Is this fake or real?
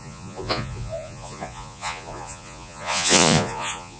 fake